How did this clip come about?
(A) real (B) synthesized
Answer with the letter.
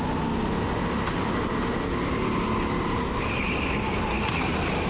A